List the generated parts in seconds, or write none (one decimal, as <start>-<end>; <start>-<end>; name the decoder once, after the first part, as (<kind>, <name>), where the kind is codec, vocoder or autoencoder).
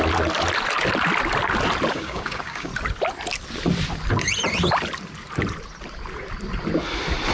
1.9-2.7 (codec, DAC)